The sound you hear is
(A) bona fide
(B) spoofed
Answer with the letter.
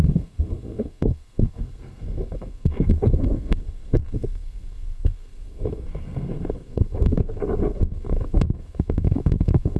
B